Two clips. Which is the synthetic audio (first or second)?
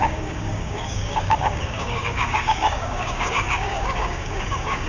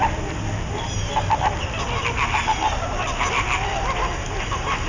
first